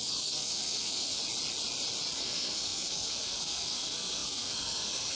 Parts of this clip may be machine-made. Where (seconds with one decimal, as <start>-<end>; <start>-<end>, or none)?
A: 0.0-1.2; 2.2-5.2

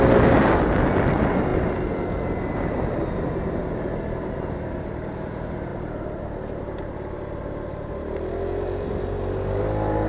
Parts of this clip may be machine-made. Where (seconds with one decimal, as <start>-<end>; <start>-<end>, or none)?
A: 5.7-7.9

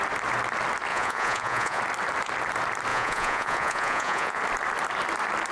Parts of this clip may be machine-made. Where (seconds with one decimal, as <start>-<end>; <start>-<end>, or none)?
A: 0.9-1.8; 2.9-4.4

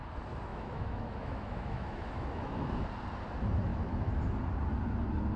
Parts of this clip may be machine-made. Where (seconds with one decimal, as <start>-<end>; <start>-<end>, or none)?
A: 0.5-2.7; 3.7-4.2

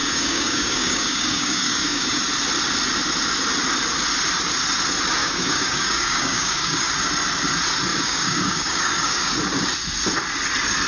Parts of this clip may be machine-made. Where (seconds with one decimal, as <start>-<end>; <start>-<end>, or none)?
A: 0.0-2.2; 5.2-6.9; 7.9-9.3

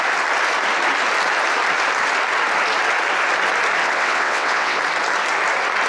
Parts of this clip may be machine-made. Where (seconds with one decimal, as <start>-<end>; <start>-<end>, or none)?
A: 3.8-4.8

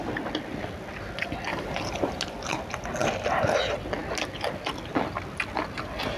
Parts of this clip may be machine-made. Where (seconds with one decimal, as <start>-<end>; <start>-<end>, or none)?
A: 1.5-2.2

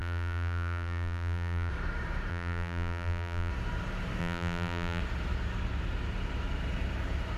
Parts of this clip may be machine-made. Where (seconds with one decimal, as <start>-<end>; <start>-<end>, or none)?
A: 0.0-1.7; 2.3-3.5; 4.2-5.0